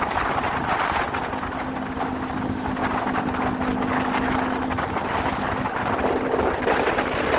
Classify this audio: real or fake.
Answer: real